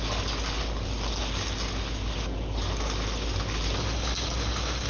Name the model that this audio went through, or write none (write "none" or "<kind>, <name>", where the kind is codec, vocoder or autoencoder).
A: none